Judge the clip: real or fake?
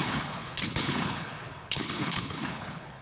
fake